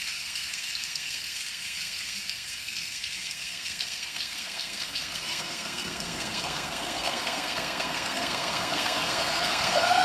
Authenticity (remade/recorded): remade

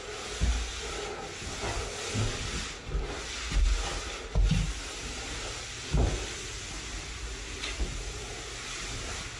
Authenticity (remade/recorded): recorded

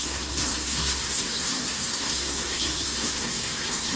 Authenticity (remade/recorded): remade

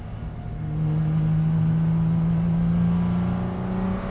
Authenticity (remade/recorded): recorded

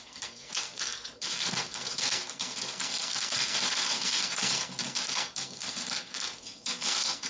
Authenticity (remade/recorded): remade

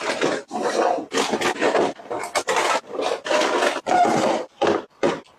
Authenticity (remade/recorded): recorded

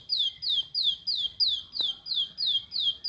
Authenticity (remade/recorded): recorded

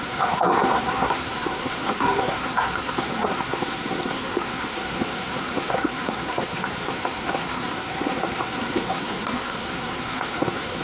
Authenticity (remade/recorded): remade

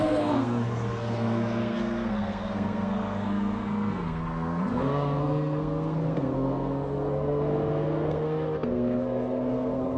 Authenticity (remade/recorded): remade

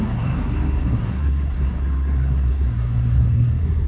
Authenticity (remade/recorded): remade